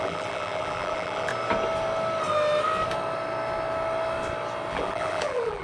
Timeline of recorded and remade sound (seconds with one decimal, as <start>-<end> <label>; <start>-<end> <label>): 0.0-1.3 remade; 1.3-4.7 recorded; 4.7-5.6 remade